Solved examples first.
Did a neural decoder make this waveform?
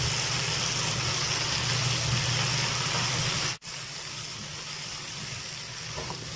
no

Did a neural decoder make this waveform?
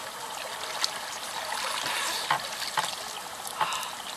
no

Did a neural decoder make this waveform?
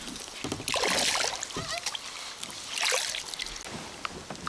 no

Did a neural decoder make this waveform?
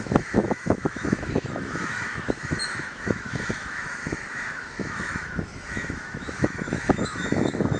yes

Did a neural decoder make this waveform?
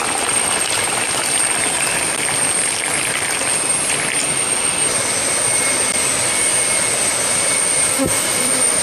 no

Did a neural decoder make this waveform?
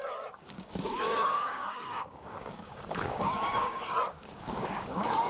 yes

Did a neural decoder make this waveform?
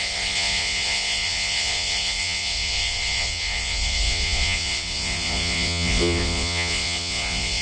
yes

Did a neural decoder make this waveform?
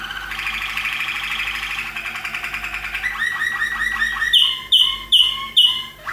no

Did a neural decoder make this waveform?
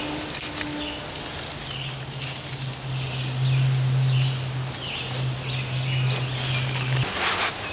no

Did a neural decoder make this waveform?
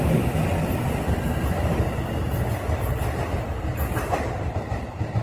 no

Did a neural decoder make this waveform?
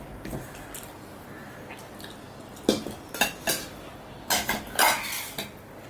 no